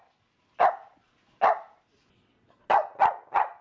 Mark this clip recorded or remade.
recorded